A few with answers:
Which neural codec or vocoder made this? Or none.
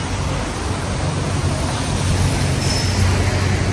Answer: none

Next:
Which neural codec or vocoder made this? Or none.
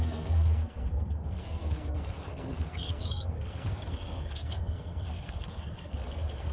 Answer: codec, SNAC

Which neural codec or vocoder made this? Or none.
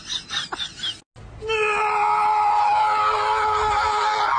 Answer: none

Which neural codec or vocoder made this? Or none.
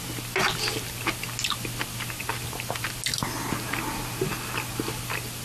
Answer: none